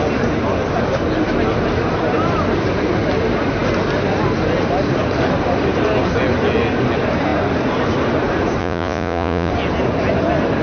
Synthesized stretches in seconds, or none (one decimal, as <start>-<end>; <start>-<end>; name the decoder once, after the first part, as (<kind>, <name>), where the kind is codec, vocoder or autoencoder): 8.6-9.5 (vocoder, Vocos)